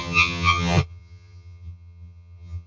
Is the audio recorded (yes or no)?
no